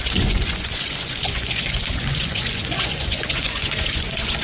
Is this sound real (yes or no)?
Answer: no